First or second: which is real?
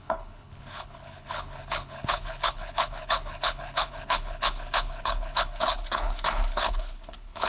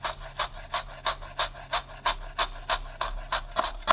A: second